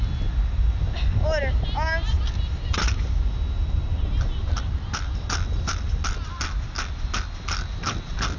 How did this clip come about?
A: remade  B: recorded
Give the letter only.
B